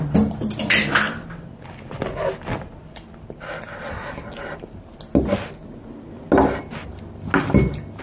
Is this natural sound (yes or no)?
yes